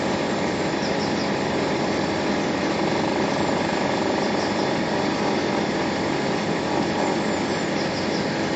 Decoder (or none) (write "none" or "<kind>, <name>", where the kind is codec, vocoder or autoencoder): vocoder, BigVGAN v2